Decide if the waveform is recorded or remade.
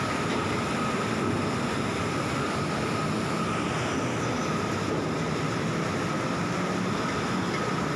recorded